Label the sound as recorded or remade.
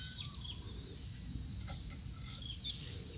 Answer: recorded